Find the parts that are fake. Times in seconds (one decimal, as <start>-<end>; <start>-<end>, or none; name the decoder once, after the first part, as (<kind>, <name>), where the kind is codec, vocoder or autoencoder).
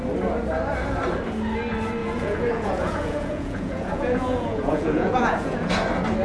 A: 2.0-5.7 (vocoder, Vocos)